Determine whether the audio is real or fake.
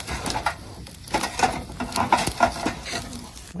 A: real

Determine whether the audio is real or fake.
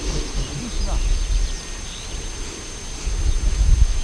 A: real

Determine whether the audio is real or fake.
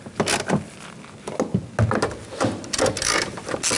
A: real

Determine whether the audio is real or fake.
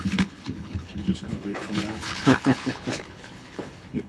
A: fake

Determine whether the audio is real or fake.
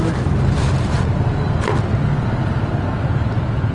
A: real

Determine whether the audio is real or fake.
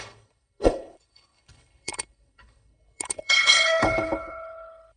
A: fake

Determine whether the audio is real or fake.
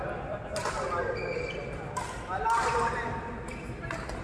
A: real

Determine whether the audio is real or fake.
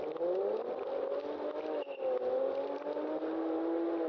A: real